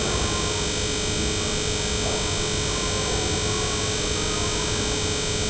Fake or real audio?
real